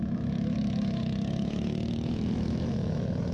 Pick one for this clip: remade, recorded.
remade